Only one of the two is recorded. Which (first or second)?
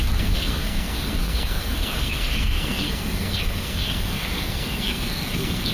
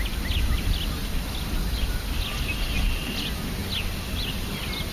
second